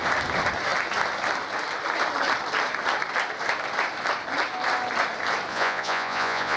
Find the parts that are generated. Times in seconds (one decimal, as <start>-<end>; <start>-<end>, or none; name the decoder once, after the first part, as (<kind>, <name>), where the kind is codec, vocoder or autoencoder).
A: 5.5-6.6 (vocoder, Vocos)